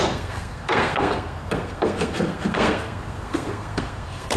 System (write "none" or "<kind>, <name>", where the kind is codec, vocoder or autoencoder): codec, SNAC